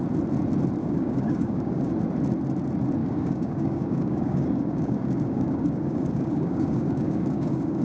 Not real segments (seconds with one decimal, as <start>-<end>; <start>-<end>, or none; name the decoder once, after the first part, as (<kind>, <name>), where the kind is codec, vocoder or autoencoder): 0.8-1.9 (codec, DAC); 3.0-7.8

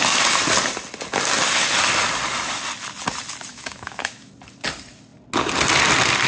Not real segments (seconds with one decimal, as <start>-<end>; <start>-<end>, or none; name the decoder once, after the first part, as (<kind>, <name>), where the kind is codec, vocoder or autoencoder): 3.5-4.3 (autoencoder, DAC-VAE)

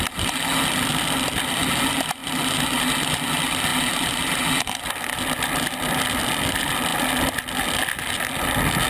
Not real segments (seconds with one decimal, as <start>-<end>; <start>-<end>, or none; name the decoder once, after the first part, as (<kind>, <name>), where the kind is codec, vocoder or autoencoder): none